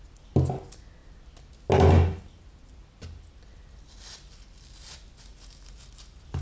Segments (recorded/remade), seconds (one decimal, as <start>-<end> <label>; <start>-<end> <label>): 0.0-6.4 recorded